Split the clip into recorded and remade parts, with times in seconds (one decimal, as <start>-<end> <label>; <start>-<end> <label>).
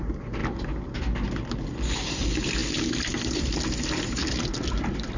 0.0-5.2 recorded